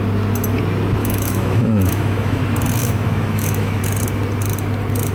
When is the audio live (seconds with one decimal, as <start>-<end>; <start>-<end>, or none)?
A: 0.0-1.0; 2.4-2.8; 3.8-5.1